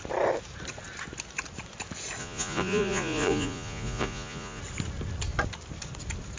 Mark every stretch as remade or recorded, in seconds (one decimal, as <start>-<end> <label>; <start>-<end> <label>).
0.0-2.2 recorded; 2.2-4.6 remade; 4.6-6.4 recorded